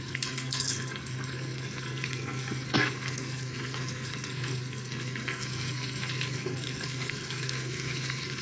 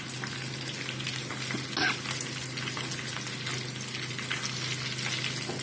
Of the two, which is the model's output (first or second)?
first